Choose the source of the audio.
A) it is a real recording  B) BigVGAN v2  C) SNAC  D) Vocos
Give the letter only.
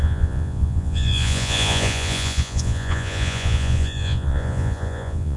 D